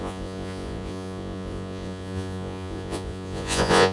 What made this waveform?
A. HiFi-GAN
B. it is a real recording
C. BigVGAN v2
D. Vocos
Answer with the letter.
D